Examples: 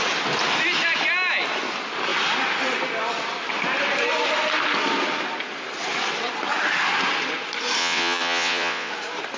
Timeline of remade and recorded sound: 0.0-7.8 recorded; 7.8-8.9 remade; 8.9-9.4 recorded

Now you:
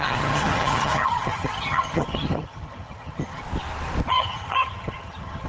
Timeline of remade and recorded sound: 0.0-3.4 remade; 3.4-4.1 recorded; 4.1-5.5 remade